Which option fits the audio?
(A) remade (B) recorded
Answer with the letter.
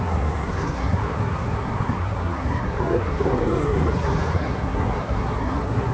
A